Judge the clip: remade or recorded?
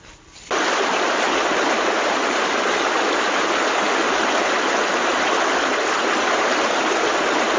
recorded